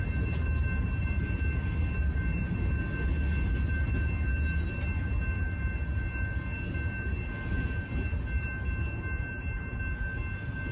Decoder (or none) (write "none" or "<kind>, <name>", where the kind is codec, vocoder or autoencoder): none